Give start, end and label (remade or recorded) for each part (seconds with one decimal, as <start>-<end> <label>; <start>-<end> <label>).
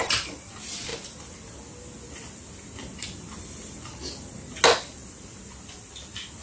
0.0-6.4 recorded